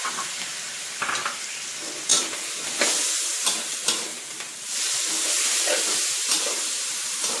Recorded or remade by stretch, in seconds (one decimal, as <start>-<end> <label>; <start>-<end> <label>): 0.0-7.4 recorded